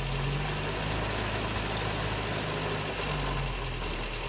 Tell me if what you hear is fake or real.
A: real